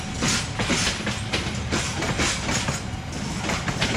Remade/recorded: recorded